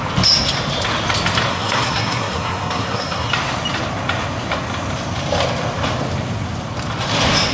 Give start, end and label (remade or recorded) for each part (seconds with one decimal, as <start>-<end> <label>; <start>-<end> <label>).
0.0-1.5 recorded; 1.5-3.3 remade; 3.3-7.5 recorded